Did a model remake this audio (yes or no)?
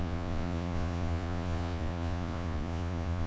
yes